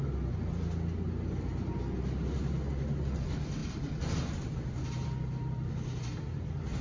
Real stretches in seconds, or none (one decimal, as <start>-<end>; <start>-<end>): 0.0-6.8